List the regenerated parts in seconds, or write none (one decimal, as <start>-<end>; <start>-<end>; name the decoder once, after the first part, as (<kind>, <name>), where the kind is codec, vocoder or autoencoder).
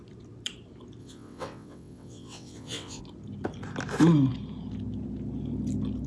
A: 1.0-3.0 (vocoder, WaveNeXt)